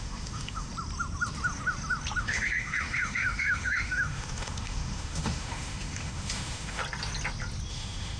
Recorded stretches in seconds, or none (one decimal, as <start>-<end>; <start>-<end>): 0.7-2.2; 6.8-7.7